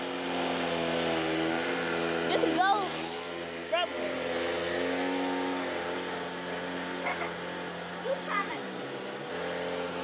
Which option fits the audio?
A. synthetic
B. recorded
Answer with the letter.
B